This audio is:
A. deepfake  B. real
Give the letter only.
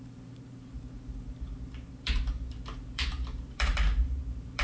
A